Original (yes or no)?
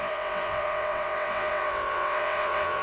no